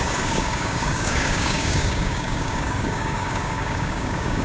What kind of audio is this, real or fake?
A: fake